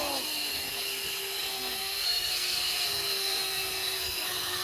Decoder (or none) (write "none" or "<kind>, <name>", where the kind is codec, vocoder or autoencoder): codec, SNAC